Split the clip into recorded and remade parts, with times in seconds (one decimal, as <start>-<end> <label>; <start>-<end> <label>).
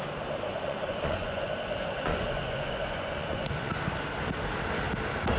0.0-0.5 recorded; 0.5-3.7 remade; 3.7-5.4 recorded